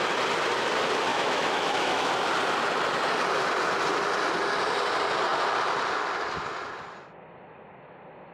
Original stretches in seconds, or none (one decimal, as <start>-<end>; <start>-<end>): 0.0-1.1; 2.1-8.3